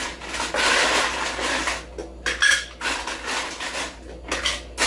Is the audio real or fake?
real